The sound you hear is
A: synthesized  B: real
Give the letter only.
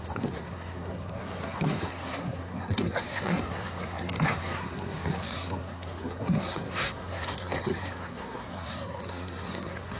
A